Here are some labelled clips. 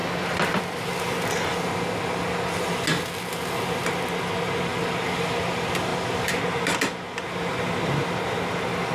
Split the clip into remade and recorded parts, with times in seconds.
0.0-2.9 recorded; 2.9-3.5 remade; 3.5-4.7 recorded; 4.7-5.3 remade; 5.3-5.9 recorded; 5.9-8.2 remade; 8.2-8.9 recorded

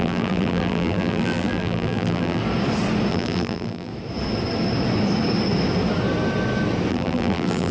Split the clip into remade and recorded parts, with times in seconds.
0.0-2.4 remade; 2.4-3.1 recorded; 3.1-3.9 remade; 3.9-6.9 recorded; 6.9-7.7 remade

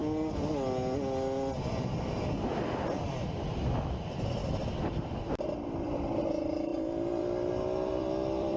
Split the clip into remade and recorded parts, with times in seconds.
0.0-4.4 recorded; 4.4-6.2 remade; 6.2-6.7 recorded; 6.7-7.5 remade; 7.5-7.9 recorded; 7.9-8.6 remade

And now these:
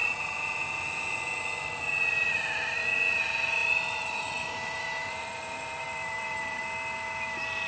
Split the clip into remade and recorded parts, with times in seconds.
0.0-3.6 recorded; 3.6-6.6 remade; 6.6-7.7 recorded

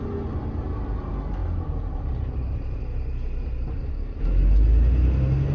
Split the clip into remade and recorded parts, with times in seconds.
0.0-1.4 recorded; 1.4-4.2 remade; 4.2-5.5 recorded

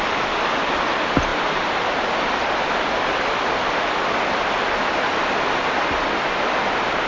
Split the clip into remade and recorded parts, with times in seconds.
0.0-1.3 recorded; 1.3-2.6 remade; 2.6-7.1 recorded